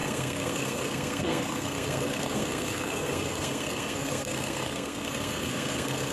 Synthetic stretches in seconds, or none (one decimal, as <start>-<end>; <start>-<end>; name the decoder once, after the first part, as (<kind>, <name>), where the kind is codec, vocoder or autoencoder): 0.0-6.1 (codec, SNAC)